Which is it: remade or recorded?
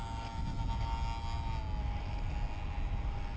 recorded